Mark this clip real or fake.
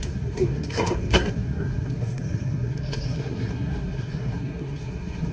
fake